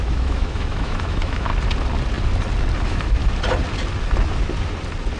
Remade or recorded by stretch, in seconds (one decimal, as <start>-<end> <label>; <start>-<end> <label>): 0.0-1.5 remade; 1.5-2.8 recorded; 2.8-3.2 remade; 3.2-5.2 recorded